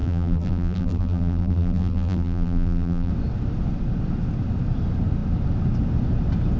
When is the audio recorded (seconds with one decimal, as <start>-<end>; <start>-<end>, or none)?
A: 3.1-6.6